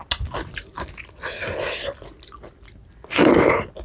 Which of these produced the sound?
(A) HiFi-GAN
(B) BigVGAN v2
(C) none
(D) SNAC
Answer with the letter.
C